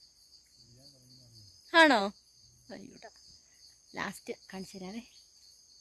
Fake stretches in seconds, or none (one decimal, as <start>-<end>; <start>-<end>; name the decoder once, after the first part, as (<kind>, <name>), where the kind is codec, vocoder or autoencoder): 0.0-0.7 (vocoder, Vocos); 2.0-5.8